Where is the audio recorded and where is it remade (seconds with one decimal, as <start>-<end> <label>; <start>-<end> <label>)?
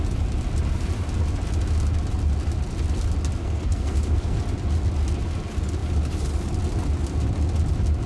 0.0-3.4 recorded; 3.4-4.4 remade; 4.4-8.1 recorded